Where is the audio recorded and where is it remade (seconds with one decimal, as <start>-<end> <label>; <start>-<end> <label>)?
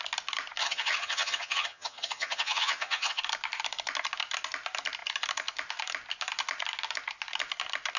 0.0-0.6 recorded; 0.6-3.2 remade; 3.2-8.0 recorded